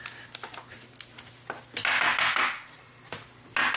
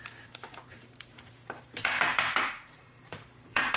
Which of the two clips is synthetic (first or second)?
second